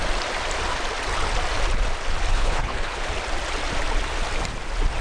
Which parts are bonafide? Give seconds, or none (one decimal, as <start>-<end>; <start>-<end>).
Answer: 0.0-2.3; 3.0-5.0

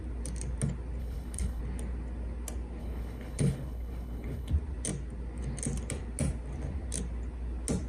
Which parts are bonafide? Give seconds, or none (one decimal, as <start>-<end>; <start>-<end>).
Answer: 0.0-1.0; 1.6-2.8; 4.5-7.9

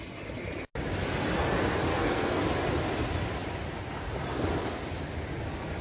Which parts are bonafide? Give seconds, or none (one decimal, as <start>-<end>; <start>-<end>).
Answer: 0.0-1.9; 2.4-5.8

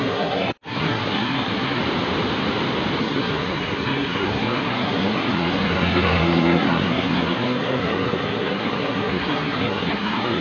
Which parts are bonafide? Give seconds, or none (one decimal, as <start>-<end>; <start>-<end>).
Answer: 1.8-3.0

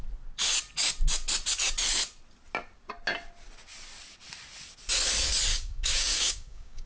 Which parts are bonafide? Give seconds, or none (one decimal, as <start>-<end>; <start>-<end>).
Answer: 0.0-5.5